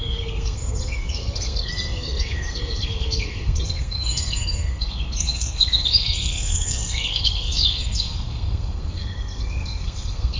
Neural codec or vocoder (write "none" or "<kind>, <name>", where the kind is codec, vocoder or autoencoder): codec, SNAC